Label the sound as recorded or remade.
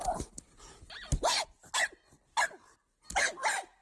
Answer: recorded